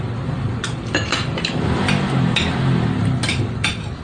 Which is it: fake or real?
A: real